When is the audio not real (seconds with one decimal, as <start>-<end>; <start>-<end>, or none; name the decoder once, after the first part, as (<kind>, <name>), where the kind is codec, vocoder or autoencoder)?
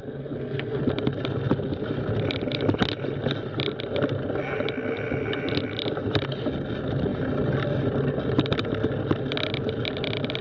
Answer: 0.0-0.8 (codec, SNAC)